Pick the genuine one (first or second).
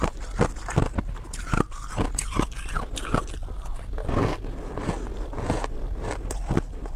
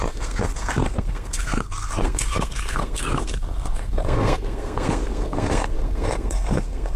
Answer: first